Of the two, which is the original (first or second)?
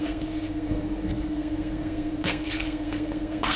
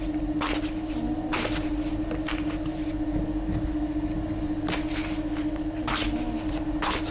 second